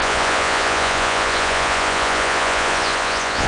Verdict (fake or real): fake